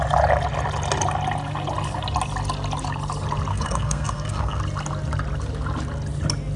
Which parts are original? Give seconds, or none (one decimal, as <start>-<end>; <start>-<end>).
0.0-3.5; 4.6-6.6